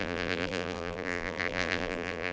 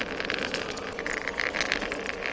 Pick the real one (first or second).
second